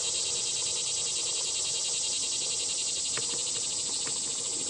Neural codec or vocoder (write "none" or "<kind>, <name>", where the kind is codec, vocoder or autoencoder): none